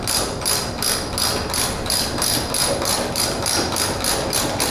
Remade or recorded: recorded